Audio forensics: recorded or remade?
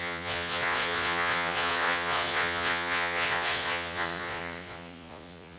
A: remade